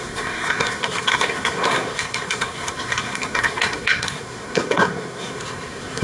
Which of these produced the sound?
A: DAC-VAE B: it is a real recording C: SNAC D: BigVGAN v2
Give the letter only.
C